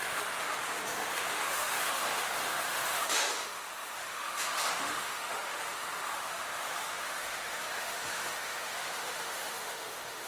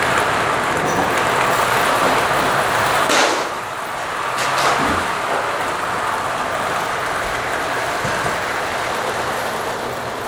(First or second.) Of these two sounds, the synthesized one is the first